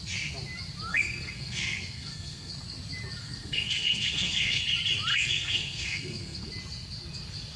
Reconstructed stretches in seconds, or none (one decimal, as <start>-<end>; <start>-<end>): 0.9-2.5; 3.2-4.6; 5.1-6.5